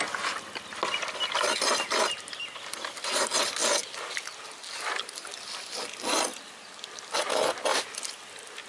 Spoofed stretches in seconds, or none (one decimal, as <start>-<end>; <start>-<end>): none